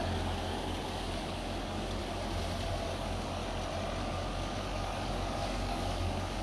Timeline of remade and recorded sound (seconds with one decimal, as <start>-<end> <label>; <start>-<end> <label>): 0.0-2.0 remade; 2.0-2.7 recorded; 2.7-3.4 remade; 3.4-4.0 recorded; 4.0-6.4 remade